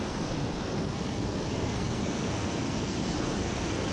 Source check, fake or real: fake